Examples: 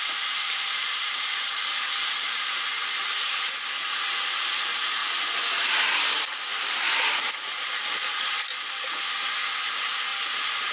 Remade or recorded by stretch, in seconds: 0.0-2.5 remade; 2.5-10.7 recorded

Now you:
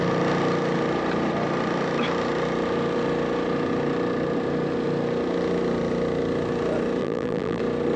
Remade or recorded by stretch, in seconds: 0.0-7.0 recorded; 7.0-7.6 remade; 7.6-8.0 recorded

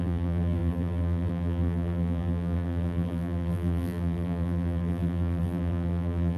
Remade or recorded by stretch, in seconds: 0.0-6.4 remade

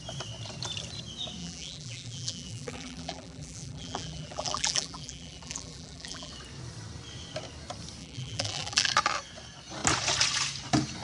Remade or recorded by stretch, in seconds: 0.0-1.4 recorded; 1.4-6.3 remade; 6.3-8.0 recorded; 8.0-8.9 remade; 8.9-11.0 recorded

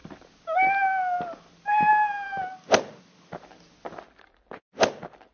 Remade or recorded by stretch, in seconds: 0.0-5.3 recorded

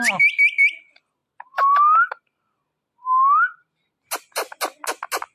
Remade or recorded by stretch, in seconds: 0.0-5.3 recorded

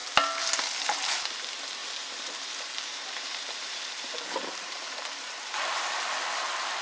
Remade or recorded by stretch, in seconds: 0.0-1.8 recorded; 1.8-5.9 remade; 5.9-6.8 recorded